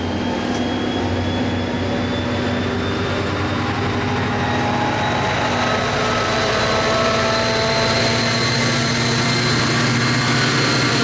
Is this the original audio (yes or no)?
yes